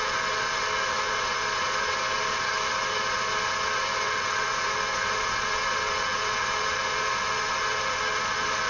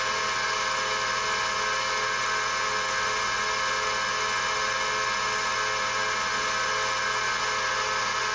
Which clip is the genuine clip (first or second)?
second